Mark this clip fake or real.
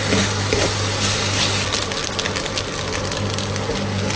real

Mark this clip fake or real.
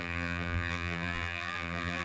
fake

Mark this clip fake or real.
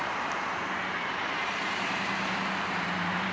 fake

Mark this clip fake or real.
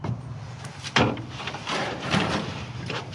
fake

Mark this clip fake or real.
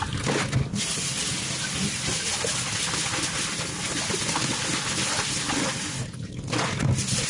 real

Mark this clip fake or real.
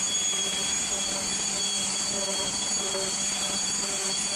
fake